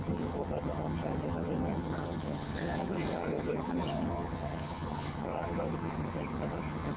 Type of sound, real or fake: fake